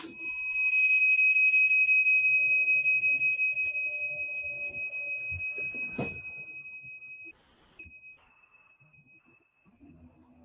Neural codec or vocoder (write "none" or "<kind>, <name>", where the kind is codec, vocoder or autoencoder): none